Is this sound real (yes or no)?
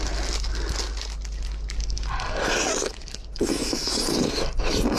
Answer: yes